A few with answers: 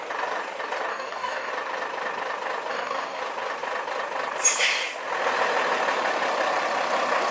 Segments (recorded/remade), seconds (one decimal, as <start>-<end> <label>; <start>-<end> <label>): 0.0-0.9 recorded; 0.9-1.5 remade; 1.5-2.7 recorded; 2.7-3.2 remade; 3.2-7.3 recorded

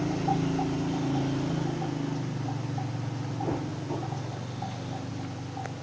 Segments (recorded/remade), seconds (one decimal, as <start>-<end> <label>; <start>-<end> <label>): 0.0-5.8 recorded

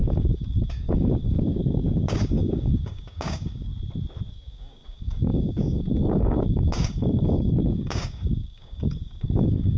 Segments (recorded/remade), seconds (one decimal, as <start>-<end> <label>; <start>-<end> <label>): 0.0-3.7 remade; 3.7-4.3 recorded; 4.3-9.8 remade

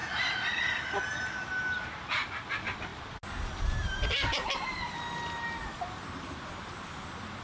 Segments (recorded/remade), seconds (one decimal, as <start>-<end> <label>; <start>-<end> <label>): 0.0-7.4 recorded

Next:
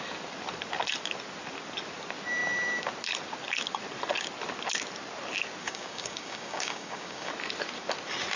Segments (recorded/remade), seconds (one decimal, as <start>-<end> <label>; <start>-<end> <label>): 0.0-5.6 recorded; 5.6-7.3 remade; 7.3-8.4 recorded

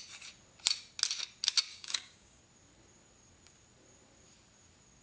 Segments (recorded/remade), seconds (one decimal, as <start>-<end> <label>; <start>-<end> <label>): 0.0-1.7 recorded; 1.7-2.4 remade; 2.4-5.0 recorded